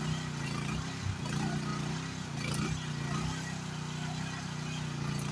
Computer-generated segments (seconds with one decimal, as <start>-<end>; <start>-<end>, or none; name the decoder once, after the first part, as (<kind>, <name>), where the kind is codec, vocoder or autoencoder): none